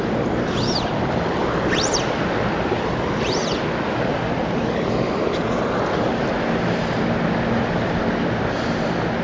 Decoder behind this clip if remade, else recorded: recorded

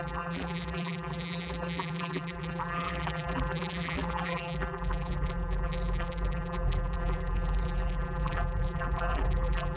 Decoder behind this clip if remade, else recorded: remade, vocoder, BigVGAN v2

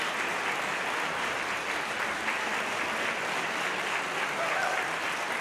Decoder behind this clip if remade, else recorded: recorded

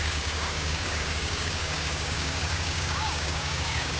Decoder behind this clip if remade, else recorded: remade, codec, DAC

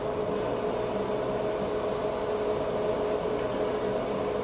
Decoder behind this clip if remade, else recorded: recorded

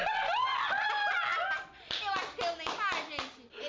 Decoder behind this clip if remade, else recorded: recorded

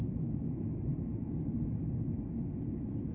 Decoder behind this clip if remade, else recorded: recorded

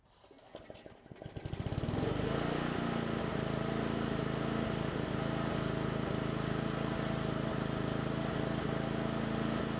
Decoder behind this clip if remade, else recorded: recorded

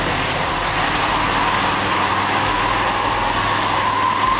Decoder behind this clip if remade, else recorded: recorded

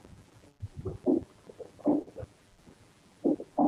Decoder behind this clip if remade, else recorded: remade, vocoder, BigVGAN v2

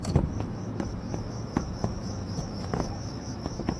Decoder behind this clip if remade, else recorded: remade, autoencoder, DAC-VAE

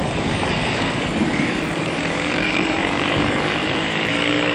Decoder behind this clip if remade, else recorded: remade, codec, DAC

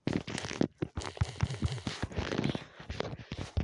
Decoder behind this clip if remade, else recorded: recorded